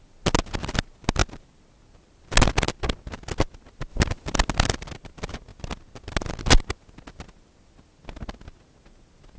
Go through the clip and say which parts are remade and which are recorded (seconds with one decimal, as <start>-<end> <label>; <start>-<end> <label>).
0.0-9.4 recorded

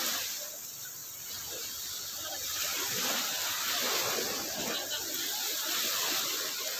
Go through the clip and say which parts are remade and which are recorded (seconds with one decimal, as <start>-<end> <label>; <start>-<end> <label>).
0.0-6.8 recorded

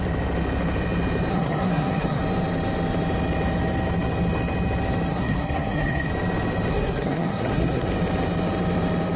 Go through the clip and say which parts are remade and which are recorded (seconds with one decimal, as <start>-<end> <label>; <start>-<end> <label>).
0.0-1.3 recorded; 1.3-2.2 remade; 2.2-5.1 recorded; 5.1-6.1 remade; 6.1-6.7 recorded; 6.7-7.9 remade; 7.9-9.2 recorded